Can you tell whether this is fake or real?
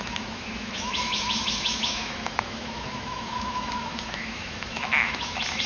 fake